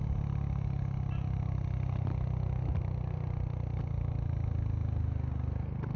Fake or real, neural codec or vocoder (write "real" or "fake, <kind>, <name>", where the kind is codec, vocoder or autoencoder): real